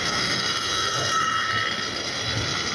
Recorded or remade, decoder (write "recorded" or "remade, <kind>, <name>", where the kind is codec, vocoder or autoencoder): recorded